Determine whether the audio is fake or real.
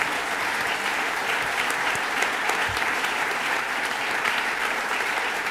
fake